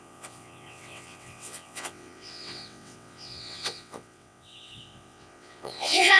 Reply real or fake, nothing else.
fake